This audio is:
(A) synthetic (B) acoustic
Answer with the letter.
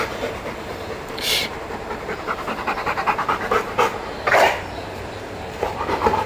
A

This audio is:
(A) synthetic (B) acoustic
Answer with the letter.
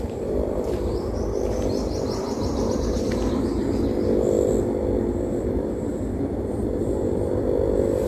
A